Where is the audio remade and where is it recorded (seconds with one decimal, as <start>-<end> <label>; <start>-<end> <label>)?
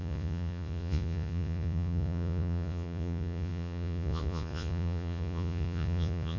0.0-6.4 remade